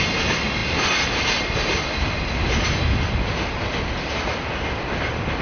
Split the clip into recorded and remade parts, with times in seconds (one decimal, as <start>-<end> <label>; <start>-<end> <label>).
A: 0.0-5.4 recorded